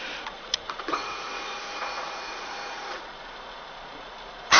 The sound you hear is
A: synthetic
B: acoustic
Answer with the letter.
A